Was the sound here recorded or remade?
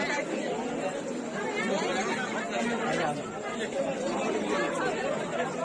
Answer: recorded